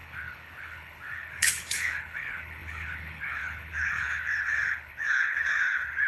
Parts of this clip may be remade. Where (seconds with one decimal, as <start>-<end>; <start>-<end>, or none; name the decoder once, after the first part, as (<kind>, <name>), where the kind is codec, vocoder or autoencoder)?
0.0-6.1 (codec, HILCodec)